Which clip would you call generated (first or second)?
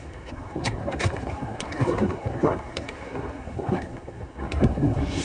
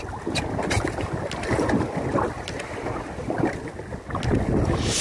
first